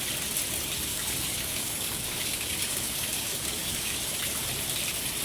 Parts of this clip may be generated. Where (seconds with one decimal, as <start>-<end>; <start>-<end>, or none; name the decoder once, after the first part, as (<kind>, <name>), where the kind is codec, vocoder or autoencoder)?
0.9-4.0 (codec, DAC)

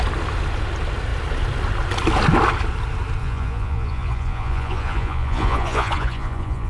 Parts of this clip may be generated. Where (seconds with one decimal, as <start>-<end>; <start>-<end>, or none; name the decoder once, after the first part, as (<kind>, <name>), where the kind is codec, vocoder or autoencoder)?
3.2-6.7 (vocoder, Vocos)

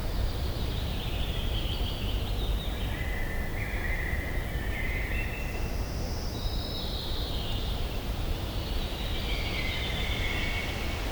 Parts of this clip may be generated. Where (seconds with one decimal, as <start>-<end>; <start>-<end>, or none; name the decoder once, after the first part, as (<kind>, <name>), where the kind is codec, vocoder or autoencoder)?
0.0-1.9 (vocoder, BigVGAN v2); 3.5-8.5